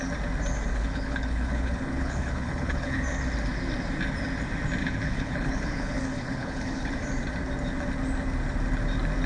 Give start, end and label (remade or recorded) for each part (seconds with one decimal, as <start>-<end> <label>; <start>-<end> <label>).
0.0-0.7 recorded; 0.7-3.0 remade; 3.0-4.8 recorded; 4.8-6.9 remade; 6.9-9.3 recorded